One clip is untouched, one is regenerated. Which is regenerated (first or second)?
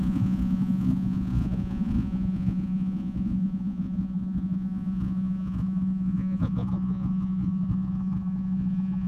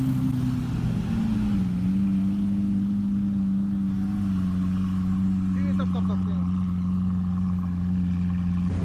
first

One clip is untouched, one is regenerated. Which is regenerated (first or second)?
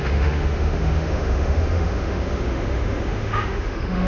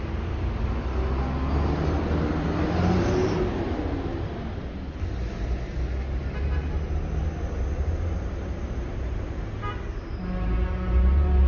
first